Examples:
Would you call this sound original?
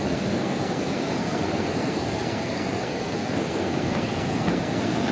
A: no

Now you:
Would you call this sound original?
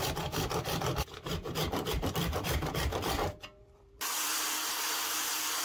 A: no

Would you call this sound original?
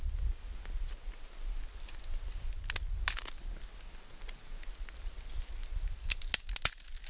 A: yes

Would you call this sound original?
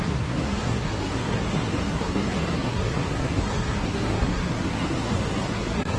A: no